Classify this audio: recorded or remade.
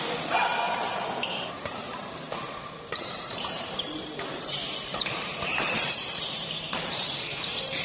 remade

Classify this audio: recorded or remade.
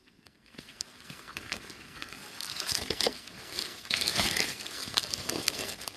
remade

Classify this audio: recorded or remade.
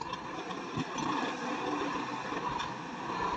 recorded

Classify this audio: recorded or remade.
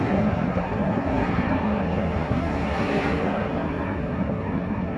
remade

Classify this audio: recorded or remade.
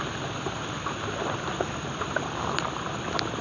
recorded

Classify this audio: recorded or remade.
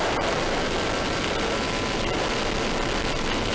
recorded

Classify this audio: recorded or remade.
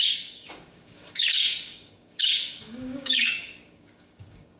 remade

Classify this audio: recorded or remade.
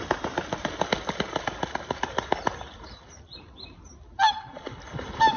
recorded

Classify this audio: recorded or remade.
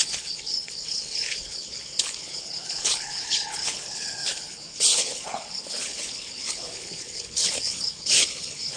remade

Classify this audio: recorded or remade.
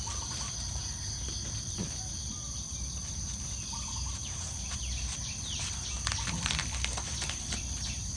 recorded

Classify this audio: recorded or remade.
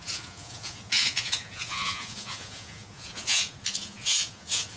remade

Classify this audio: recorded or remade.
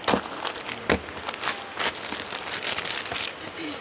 recorded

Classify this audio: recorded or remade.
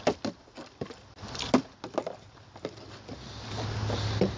recorded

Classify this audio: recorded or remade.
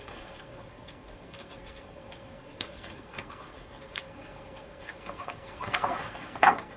remade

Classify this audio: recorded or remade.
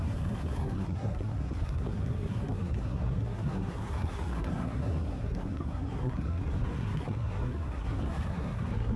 remade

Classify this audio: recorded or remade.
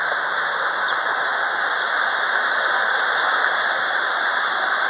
recorded